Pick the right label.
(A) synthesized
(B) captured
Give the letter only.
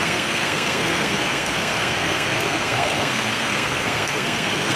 A